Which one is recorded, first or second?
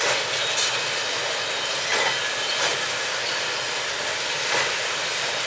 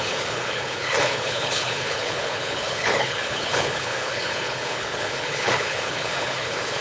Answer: first